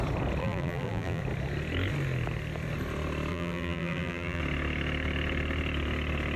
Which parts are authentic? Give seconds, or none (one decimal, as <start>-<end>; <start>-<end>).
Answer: 0.0-0.4; 1.2-3.3; 4.4-6.4